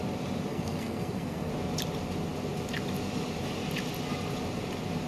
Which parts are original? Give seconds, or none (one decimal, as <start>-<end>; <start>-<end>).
0.0-0.5; 1.5-5.1